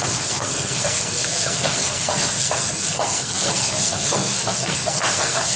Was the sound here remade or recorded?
remade